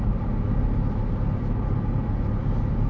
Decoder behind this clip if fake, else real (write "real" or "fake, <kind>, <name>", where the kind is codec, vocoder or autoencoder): real